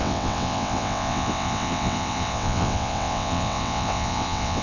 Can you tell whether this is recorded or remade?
remade